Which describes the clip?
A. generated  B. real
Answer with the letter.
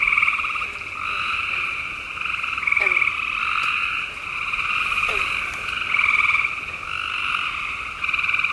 B